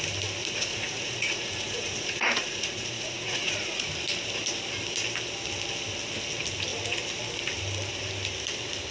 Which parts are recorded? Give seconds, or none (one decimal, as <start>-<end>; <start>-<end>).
0.0-0.4; 3.9-8.9